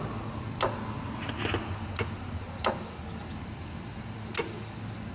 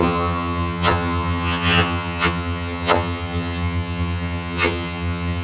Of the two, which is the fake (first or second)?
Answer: second